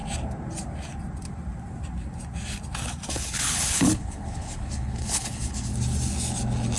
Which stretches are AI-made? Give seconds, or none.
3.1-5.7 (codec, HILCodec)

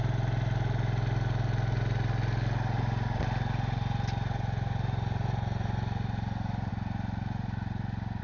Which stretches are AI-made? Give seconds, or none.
none